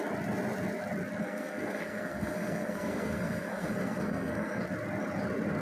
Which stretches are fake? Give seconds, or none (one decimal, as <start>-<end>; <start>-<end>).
1.2-4.6